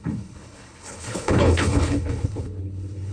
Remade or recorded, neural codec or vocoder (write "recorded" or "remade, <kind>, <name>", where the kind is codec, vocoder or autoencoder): remade, codec, HILCodec